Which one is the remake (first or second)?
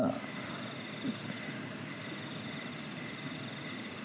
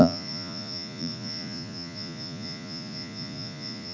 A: second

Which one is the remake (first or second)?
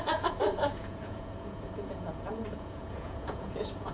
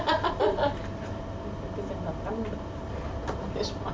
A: first